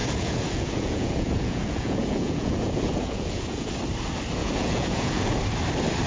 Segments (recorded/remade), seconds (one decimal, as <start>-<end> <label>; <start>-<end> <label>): 0.0-3.7 remade; 3.7-4.4 recorded; 4.4-5.4 remade; 5.4-6.1 recorded